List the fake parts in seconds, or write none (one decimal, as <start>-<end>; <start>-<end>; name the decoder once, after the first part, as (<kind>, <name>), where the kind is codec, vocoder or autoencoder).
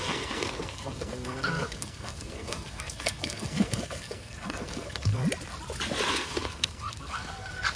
0.0-5.2 (codec, SNAC); 6.1-7.8